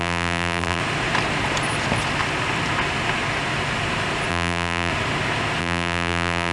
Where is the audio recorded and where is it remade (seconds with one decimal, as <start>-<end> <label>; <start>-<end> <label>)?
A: 0.0-0.8 remade; 0.8-4.3 recorded; 4.3-4.9 remade; 4.9-5.6 recorded; 5.6-6.5 remade